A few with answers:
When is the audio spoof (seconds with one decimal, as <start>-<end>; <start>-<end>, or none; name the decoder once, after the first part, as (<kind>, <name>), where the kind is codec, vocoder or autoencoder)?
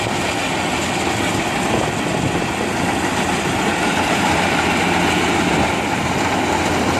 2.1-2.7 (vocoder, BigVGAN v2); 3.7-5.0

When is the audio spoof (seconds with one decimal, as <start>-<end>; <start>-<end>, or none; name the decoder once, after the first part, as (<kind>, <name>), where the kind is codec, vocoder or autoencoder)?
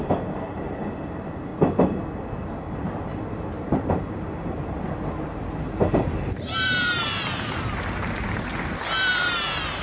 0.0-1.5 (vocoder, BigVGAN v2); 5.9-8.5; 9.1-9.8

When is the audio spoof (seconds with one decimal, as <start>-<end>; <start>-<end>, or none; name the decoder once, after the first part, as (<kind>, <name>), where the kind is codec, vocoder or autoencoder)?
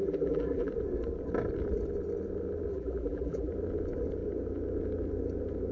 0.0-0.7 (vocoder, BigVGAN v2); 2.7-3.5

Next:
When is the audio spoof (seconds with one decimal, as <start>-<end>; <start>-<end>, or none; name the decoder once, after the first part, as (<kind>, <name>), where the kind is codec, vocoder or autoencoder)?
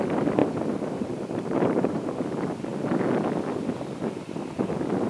0.4-2.2 (vocoder, BigVGAN v2)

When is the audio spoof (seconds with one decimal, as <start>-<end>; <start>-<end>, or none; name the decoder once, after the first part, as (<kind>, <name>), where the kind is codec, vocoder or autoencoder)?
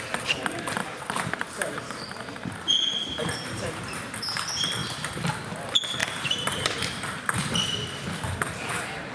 0.8-3.7 (vocoder, BigVGAN v2); 4.8-5.3; 6.0-7.4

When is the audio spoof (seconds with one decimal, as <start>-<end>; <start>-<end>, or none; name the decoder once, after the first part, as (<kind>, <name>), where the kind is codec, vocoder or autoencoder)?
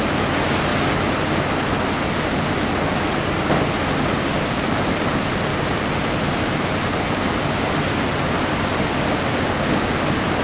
5.5-8.3 (vocoder, BigVGAN v2)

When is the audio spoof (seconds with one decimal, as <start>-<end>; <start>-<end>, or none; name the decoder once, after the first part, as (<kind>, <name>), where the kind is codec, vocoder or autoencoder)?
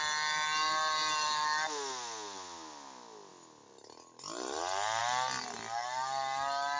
none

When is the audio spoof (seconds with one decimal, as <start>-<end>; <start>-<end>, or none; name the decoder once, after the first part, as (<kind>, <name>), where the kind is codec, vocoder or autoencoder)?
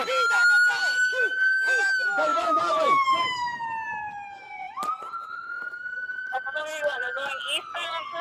2.3-5.9 (vocoder, BigVGAN v2)